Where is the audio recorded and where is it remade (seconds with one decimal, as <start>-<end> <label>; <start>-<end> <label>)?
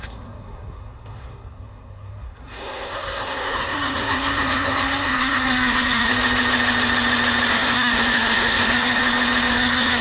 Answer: 0.0-6.1 remade; 6.1-7.5 recorded; 7.5-9.0 remade; 9.0-9.5 recorded; 9.5-10.0 remade